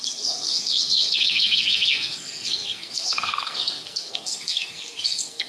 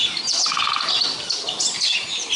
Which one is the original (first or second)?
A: second